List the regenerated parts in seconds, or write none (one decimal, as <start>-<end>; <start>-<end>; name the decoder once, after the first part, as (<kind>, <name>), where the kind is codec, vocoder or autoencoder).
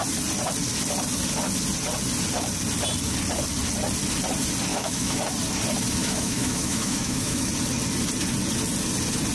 4.7-5.2 (autoencoder, DAC-VAE); 6.0-7.5